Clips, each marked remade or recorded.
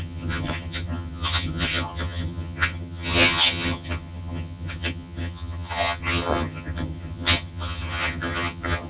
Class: remade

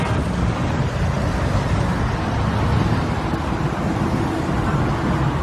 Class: recorded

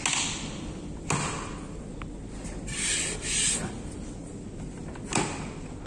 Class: recorded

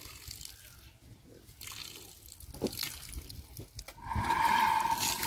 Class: recorded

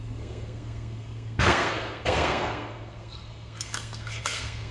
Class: remade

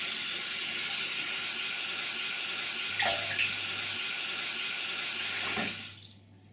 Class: recorded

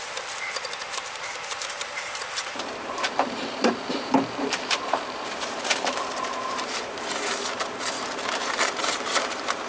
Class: remade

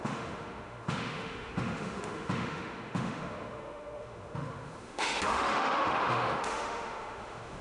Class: remade